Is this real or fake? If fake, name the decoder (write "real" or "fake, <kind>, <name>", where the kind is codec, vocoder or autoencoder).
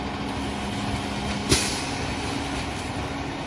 real